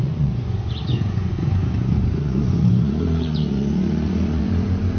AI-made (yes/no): yes